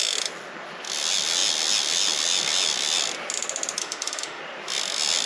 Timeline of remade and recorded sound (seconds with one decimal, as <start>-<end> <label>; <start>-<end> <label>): 0.0-3.8 recorded; 3.8-4.4 remade; 4.4-5.3 recorded